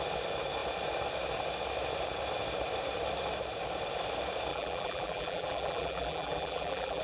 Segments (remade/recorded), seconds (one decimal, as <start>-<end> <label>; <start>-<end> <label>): 0.0-4.5 recorded; 4.5-7.0 remade